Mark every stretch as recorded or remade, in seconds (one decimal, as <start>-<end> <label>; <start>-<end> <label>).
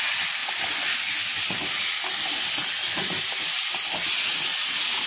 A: 0.0-5.1 recorded